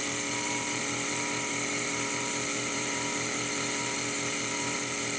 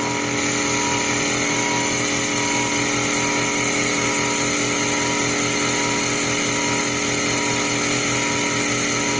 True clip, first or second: second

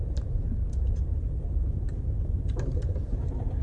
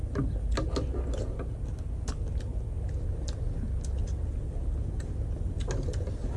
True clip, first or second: second